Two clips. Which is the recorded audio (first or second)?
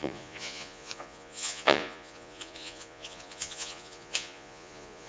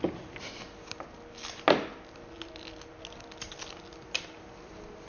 second